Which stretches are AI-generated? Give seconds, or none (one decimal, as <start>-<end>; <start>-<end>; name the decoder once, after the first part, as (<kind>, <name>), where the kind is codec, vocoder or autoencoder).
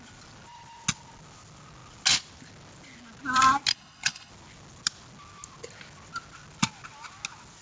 3.7-4.3 (codec, HILCodec)